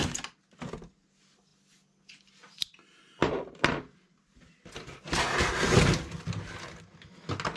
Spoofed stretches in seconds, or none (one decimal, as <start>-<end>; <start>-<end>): 3.2-4.4